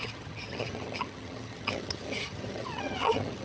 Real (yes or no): no